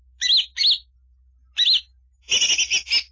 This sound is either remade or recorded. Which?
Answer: recorded